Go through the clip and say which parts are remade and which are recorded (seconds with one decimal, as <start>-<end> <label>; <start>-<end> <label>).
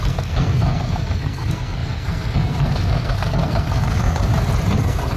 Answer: 0.0-4.3 remade; 4.3-4.8 recorded; 4.8-5.2 remade